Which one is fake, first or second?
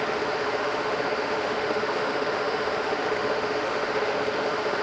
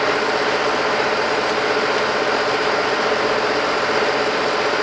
first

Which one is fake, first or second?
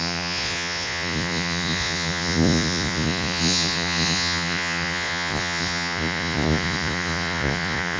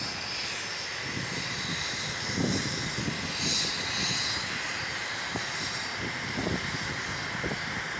first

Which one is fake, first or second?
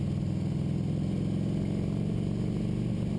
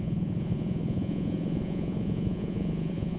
second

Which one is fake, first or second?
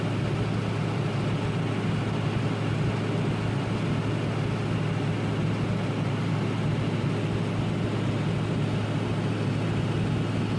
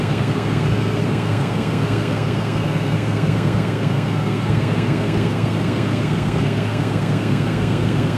second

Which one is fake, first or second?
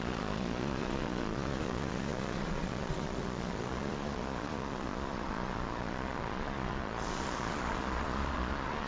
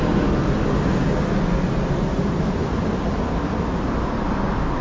first